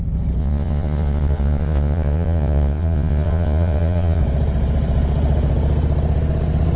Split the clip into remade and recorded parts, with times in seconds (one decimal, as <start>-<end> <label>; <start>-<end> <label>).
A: 0.0-0.4 recorded; 0.4-4.2 remade; 4.2-6.8 recorded